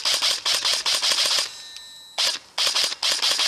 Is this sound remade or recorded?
recorded